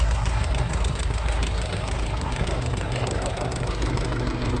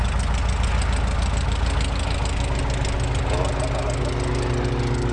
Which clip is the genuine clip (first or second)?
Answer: second